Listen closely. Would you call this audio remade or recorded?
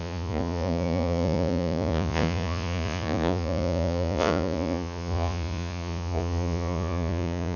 remade